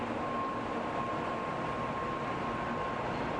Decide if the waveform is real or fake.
real